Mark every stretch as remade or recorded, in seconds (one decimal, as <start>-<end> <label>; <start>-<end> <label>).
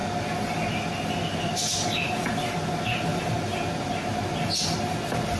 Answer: 0.0-5.4 recorded